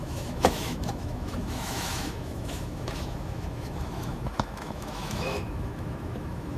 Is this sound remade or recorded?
remade